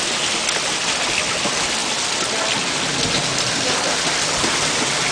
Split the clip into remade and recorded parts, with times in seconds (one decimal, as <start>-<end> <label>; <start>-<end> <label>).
0.0-5.1 recorded